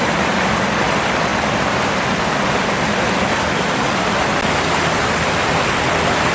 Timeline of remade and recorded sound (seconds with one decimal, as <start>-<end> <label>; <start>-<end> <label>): 0.0-6.3 recorded

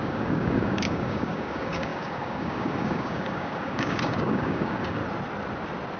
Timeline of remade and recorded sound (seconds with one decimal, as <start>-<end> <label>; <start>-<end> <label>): 0.0-5.0 remade; 5.0-6.0 recorded

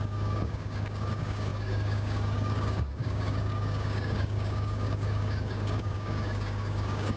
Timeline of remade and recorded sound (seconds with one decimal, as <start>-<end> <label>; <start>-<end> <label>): 0.0-7.2 remade

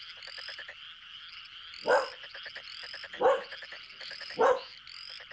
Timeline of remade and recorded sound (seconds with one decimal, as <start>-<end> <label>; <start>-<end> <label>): 0.0-5.3 recorded

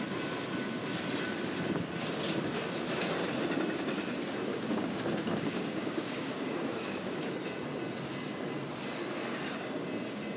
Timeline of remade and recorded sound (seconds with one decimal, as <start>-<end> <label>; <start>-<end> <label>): 0.0-4.5 recorded; 4.5-7.3 remade; 7.3-10.4 recorded

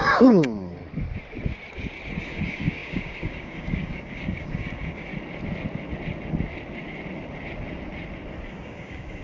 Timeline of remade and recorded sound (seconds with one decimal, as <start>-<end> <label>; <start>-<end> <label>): 0.0-0.8 remade; 0.8-2.2 recorded; 2.2-5.1 remade; 5.1-8.5 recorded; 8.5-9.2 remade

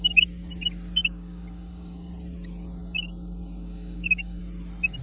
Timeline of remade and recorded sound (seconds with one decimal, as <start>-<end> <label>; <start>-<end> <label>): 0.0-1.0 recorded; 1.0-2.1 remade; 2.1-2.8 recorded; 2.8-4.4 remade; 4.4-5.0 recorded

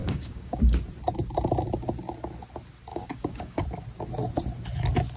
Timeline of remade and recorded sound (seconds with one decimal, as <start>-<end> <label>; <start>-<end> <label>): 0.0-0.6 remade; 0.6-2.9 recorded; 2.9-3.6 remade; 3.6-5.2 recorded